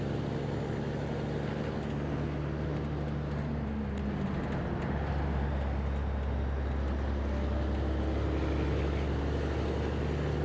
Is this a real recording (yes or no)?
yes